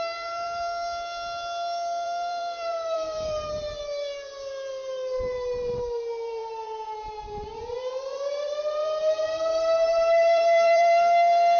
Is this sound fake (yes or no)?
yes